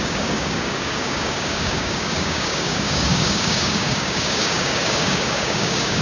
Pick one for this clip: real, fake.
fake